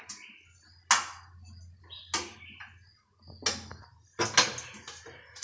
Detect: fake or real real